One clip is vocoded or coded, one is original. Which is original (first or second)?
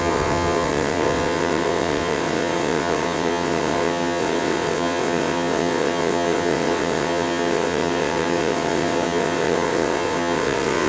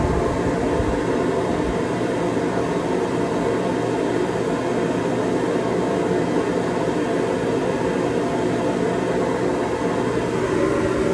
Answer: second